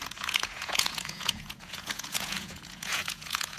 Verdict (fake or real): fake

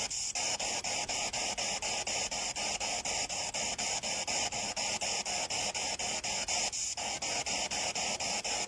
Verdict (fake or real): real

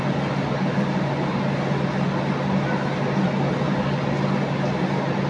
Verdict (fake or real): real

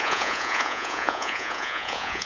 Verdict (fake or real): fake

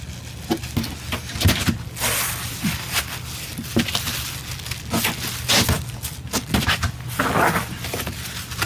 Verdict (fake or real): real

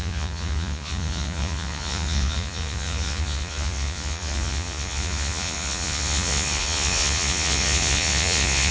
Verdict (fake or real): fake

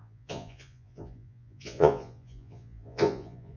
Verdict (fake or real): fake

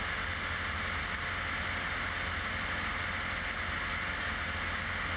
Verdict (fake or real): real